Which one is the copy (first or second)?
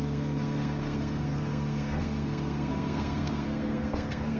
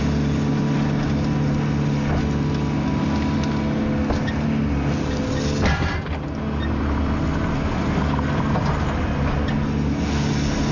first